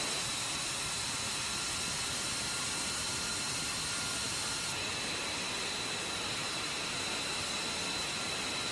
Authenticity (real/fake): real